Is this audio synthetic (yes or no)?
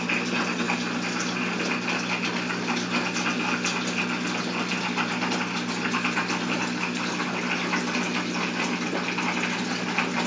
no